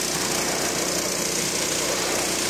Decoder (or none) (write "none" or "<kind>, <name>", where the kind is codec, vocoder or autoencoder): none